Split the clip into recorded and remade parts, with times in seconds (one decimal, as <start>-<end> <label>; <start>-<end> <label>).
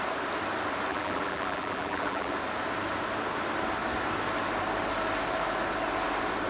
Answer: 0.0-0.9 recorded; 0.9-2.3 remade; 2.3-6.5 recorded